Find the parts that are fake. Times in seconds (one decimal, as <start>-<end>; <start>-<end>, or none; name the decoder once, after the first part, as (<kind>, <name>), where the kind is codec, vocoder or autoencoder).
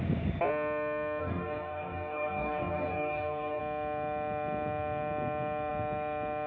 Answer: 1.2-3.6 (codec, DAC)